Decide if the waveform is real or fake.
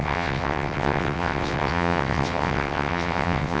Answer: fake